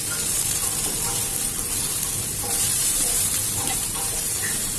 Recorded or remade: remade